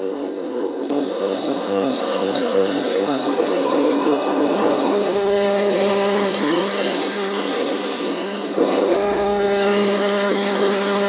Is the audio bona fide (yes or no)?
no